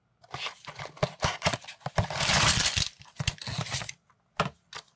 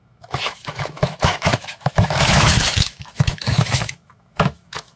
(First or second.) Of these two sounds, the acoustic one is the first